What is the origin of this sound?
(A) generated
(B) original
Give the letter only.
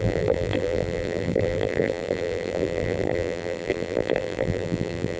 A